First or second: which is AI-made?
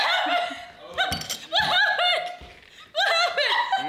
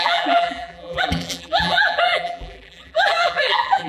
second